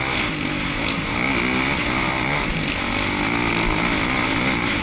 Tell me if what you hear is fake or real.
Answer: real